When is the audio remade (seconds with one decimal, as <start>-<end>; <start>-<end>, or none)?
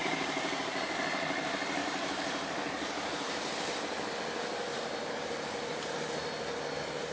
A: 0.0-0.6; 1.8-4.1